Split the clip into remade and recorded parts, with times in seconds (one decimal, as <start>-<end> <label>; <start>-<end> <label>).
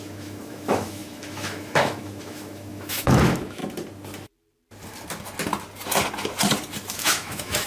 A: 0.0-3.6 remade; 3.6-6.9 recorded; 6.9-7.7 remade